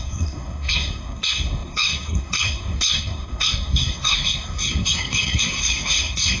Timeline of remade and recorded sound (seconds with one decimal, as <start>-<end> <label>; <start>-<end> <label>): 0.0-6.4 remade